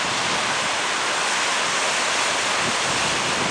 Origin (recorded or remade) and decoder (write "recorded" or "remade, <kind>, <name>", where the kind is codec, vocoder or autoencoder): recorded